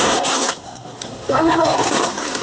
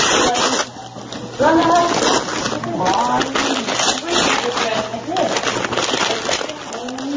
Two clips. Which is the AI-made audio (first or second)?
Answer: first